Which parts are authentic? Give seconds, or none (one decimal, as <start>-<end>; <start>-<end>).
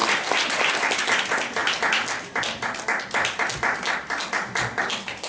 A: 0.0-5.3